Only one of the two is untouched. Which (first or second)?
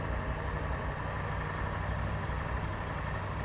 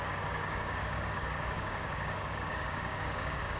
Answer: first